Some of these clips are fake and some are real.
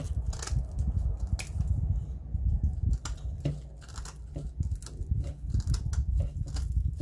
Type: real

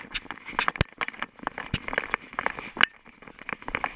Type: real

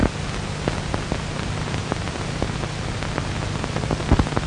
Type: real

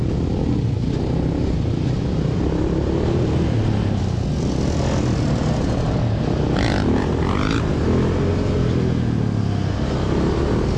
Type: real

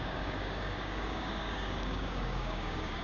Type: fake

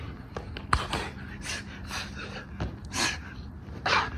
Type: real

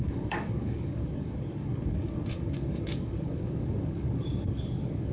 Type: fake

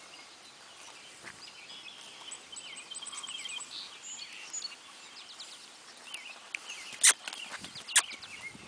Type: real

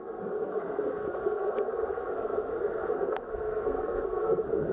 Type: fake